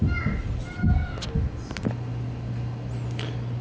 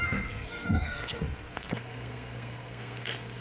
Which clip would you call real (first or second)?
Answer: first